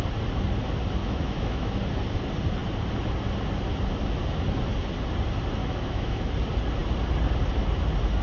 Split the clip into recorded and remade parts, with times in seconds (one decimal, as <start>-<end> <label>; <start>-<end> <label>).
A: 0.0-1.0 recorded; 1.0-1.7 remade; 1.7-5.6 recorded; 5.6-6.3 remade; 6.3-8.2 recorded